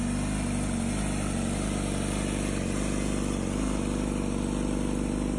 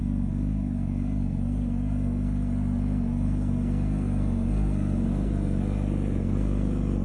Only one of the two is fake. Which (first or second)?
second